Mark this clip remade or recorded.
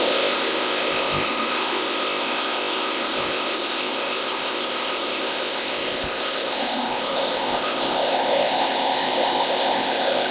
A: remade